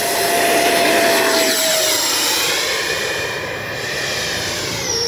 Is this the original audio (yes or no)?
no